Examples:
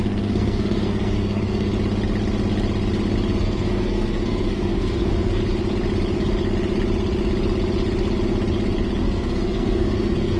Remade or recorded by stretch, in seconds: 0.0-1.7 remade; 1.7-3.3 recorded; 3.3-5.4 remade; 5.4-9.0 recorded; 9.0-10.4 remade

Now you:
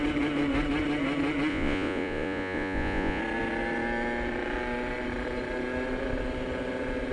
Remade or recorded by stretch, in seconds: 0.0-1.5 recorded; 1.5-3.2 remade; 3.2-7.1 recorded

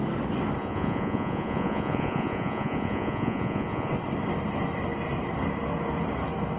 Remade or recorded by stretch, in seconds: 0.0-0.6 recorded; 0.6-3.9 remade; 3.9-6.6 recorded

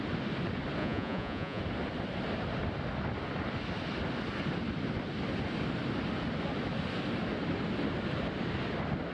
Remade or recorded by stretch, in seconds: 0.0-0.8 recorded; 0.8-1.6 remade; 1.6-9.1 recorded

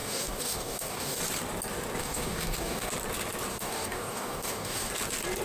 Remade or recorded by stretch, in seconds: 0.0-1.2 remade; 1.2-2.0 recorded; 2.0-2.9 remade; 2.9-3.5 recorded; 3.5-4.9 remade; 4.9-5.4 recorded

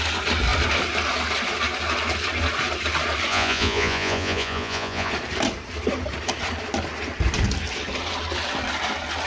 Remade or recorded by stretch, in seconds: 0.0-3.3 recorded; 3.3-5.1 remade; 5.1-9.3 recorded